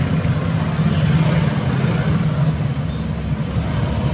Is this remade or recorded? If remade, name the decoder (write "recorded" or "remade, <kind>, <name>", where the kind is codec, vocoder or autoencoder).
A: recorded